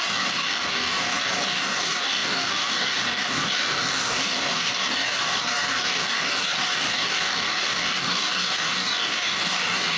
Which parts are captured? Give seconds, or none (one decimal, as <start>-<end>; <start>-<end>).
none